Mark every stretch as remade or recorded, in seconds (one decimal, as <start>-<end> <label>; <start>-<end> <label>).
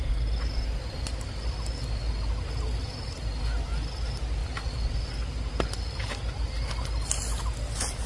0.0-4.4 recorded; 4.4-5.5 remade; 5.5-8.1 recorded